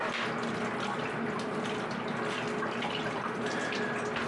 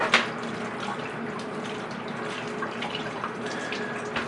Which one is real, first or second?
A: first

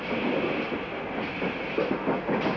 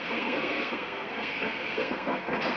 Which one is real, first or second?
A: first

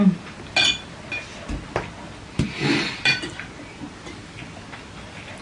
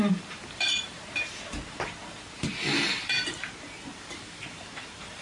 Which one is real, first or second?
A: first